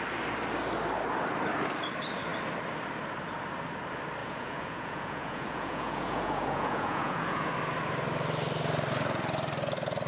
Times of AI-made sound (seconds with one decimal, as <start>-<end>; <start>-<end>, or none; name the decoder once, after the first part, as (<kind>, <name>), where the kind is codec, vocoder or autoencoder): 4.2-7.5 (vocoder, Vocos)